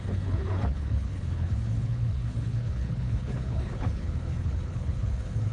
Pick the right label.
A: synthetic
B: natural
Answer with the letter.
A